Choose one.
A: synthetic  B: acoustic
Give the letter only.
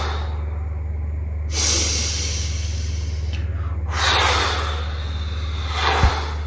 B